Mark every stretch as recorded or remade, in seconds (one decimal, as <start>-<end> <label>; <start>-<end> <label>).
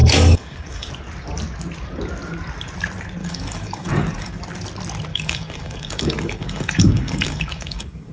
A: 0.0-0.9 remade; 0.9-3.2 recorded; 3.2-4.4 remade; 4.4-5.1 recorded; 5.1-8.1 remade